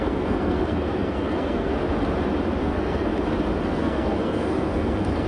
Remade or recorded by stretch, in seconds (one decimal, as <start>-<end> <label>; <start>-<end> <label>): 0.0-1.7 remade; 1.7-2.6 recorded; 2.6-3.1 remade; 3.1-3.6 recorded; 3.6-5.3 remade